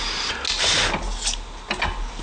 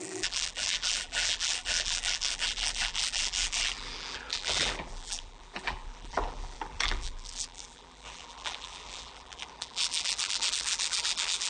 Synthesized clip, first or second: second